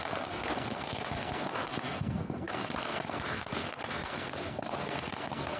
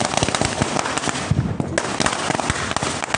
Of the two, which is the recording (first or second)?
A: second